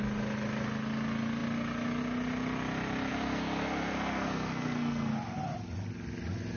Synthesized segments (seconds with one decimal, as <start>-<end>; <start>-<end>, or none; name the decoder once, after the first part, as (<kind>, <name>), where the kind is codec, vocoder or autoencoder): 3.1-5.1 (codec, SNAC)

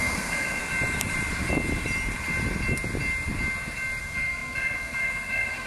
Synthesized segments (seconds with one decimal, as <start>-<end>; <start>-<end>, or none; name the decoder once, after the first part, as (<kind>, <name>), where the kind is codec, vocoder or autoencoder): 0.0-0.6 (codec, SNAC); 4.0-5.7

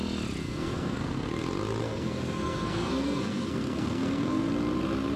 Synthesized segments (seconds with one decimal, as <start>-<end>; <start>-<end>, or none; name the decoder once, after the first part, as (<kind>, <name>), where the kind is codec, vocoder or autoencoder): 0.4-1.3 (codec, SNAC); 1.8-4.5

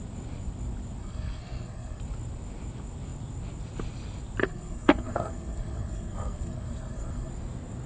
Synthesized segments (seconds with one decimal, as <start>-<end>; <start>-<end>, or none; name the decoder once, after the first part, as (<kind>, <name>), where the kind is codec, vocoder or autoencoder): 1.0-2.0 (codec, SNAC); 4.4-7.3

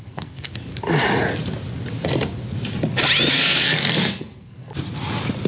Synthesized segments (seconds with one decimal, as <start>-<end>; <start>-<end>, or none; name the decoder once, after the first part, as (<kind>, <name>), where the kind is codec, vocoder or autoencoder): 0.0-0.7 (codec, SNAC); 3.3-4.7

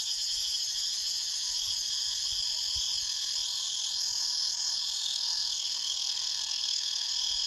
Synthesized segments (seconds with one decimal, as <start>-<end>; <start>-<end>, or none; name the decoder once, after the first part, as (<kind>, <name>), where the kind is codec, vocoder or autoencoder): 5.0-7.1 (codec, SNAC)

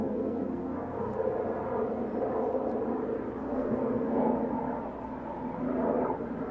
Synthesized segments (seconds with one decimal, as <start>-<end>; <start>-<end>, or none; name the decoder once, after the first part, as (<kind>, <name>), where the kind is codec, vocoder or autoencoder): 0.0-1.1 (codec, SNAC); 3.4-4.4